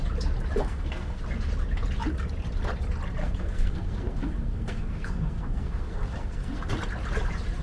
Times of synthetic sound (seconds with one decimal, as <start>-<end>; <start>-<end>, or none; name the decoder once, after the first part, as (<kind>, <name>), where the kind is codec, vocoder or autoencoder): 0.6-1.2 (codec, SNAC); 3.2-6.7